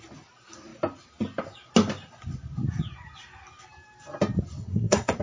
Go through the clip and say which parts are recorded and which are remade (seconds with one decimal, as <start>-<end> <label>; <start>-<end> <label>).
0.0-4.6 recorded; 4.6-5.2 remade